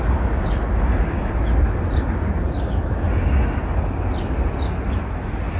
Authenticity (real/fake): real